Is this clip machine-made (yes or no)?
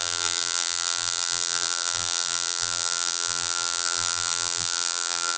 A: yes